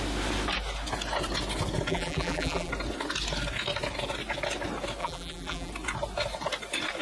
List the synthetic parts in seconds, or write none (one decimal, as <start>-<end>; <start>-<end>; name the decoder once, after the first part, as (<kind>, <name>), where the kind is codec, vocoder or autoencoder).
1.9-2.7 (vocoder, BigVGAN v2); 5.0-5.7